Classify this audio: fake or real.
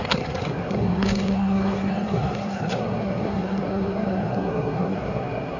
fake